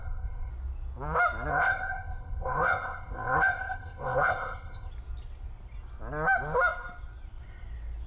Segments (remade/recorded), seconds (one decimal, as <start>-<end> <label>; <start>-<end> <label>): 0.0-0.5 remade; 0.5-1.5 recorded; 1.5-4.9 remade; 4.9-8.1 recorded